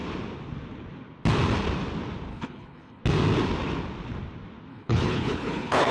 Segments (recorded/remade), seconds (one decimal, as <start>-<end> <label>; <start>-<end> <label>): 0.0-2.3 recorded; 2.3-3.0 remade; 3.0-4.7 recorded; 4.7-5.9 remade